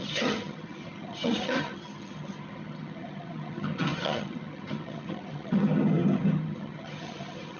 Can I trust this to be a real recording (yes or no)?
no